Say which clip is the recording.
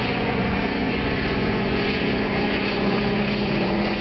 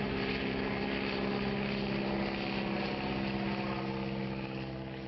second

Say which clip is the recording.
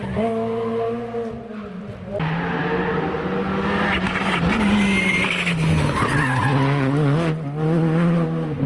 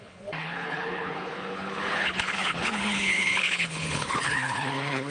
first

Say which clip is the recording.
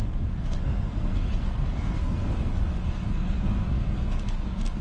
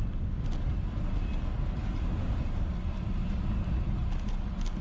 second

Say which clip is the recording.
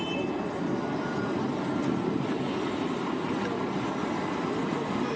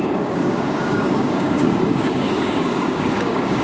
first